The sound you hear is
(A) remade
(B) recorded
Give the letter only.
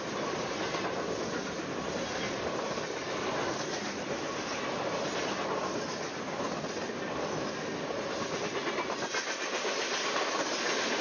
B